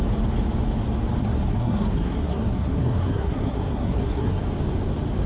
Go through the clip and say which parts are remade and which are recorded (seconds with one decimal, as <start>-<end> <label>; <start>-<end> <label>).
0.0-1.2 recorded; 1.2-4.4 remade; 4.4-5.3 recorded